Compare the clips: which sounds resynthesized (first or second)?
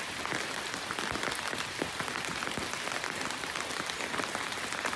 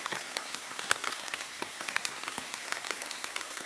second